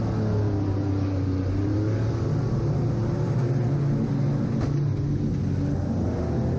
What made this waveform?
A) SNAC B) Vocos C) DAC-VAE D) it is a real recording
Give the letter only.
D